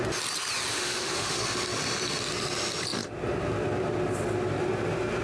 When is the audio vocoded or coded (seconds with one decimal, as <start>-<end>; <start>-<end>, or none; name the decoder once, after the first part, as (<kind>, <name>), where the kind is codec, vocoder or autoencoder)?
0.7-1.4 (autoencoder, DAC-VAE)